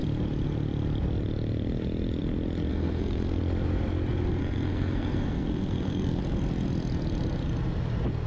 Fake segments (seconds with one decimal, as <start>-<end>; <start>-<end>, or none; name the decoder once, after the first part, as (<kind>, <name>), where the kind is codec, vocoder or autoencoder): 2.7-3.4 (codec, SNAC); 4.4-6.2